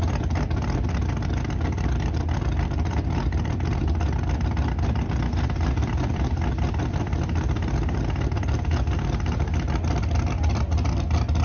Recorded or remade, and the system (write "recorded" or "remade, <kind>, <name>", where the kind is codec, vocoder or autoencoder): recorded